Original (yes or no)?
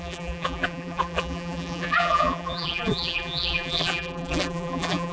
no